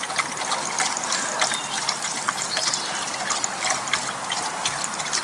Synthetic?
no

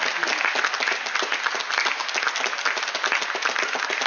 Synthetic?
no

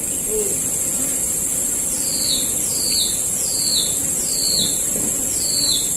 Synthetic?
no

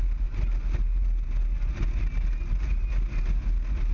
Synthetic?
no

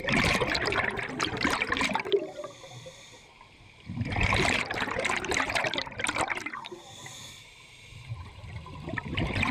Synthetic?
yes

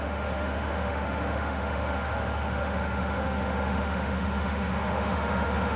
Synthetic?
yes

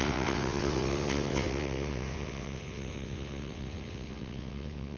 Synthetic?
yes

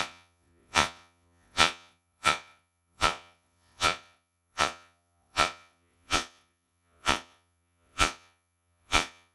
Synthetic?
yes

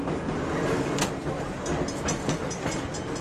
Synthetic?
no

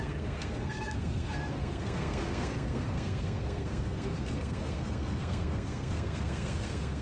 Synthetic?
yes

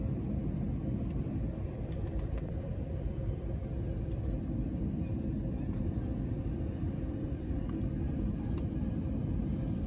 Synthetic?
yes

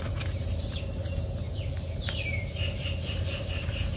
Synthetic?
no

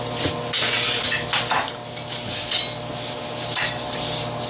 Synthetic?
no